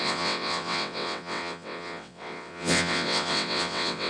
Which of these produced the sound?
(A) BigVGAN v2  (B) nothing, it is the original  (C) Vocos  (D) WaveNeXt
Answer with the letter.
D